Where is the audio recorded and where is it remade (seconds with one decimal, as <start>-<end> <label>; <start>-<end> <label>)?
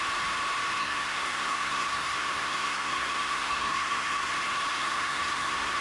0.0-0.8 recorded; 0.8-4.3 remade; 4.3-4.7 recorded; 4.7-5.8 remade